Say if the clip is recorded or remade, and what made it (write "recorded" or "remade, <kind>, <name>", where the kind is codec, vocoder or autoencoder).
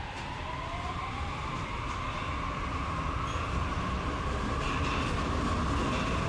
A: recorded